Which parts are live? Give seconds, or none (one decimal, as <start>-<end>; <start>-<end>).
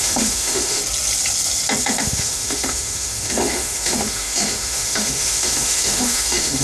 0.8-1.8